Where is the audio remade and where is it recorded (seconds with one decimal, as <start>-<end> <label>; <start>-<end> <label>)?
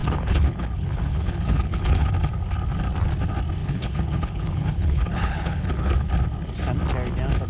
0.0-2.1 remade; 2.1-3.6 recorded; 3.6-6.1 remade; 6.1-7.5 recorded